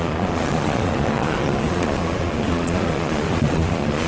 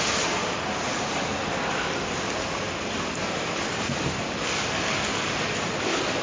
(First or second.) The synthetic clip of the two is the first